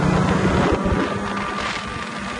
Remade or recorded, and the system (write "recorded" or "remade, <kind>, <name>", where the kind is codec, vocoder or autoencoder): recorded